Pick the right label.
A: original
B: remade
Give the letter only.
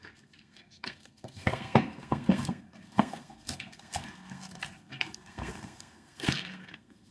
B